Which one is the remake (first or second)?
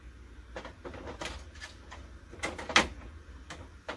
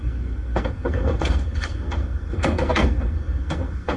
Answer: second